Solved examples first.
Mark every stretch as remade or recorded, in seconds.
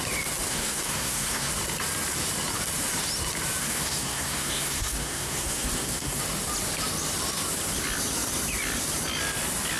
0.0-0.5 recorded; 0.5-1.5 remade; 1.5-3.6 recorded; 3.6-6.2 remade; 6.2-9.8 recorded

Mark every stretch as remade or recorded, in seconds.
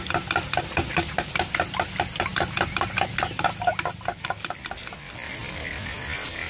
0.0-6.5 recorded